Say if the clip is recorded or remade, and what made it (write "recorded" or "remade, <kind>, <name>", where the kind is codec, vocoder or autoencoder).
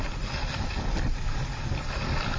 recorded